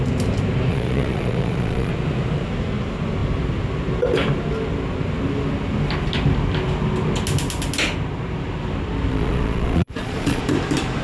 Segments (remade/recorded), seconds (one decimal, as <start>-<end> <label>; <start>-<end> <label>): 0.0-0.7 recorded; 0.7-1.9 remade; 1.9-9.1 recorded; 9.1-10.4 remade; 10.4-11.0 recorded